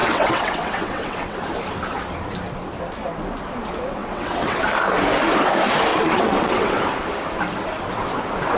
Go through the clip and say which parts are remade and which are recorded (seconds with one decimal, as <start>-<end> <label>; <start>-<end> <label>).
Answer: 0.0-1.4 remade; 1.4-4.0 recorded; 4.0-4.6 remade; 4.6-5.9 recorded; 5.9-6.8 remade; 6.8-8.6 recorded